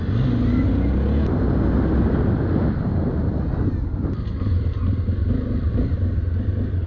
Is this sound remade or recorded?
recorded